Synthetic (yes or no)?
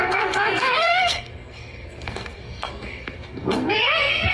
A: yes